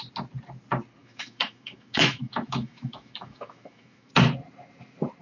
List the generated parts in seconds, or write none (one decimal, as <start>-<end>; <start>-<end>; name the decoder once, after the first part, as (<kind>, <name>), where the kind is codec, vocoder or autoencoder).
1.0-4.1 (autoencoder, DAC-VAE)